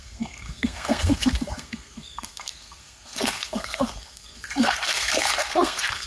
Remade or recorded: remade